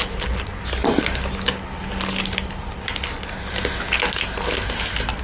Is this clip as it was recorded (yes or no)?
yes